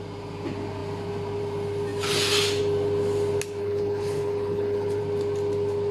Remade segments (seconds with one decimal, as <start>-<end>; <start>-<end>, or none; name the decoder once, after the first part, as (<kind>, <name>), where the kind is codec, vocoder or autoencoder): 3.6-5.0 (codec, HILCodec)